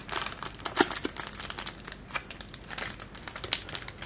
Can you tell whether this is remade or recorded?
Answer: remade